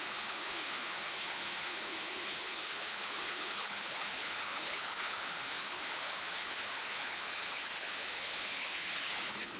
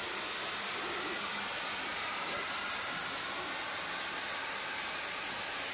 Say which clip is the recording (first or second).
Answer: second